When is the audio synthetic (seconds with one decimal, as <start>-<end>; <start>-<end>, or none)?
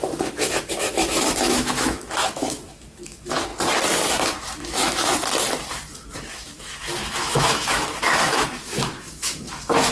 0.0-3.5; 4.1-5.1; 5.7-9.9